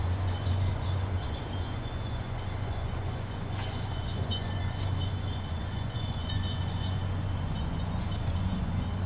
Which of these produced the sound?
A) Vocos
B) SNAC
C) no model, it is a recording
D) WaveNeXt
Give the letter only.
A